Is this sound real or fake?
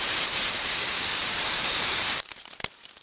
fake